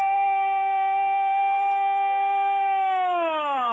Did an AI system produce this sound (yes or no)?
yes